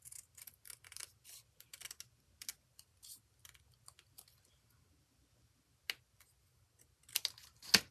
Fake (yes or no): no